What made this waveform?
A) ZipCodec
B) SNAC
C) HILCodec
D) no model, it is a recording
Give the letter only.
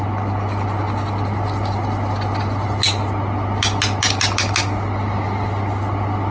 D